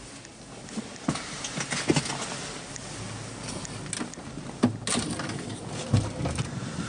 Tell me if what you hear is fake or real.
real